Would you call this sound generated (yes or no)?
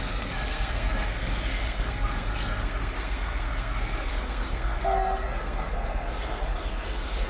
yes